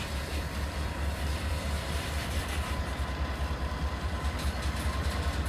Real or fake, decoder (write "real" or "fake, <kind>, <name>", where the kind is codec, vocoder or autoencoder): fake, vocoder, BigVGAN v2